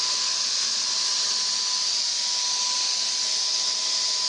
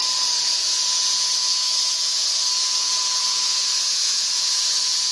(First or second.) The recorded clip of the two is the first